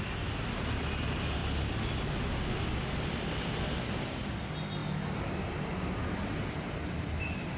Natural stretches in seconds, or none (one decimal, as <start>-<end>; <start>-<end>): 0.0-7.6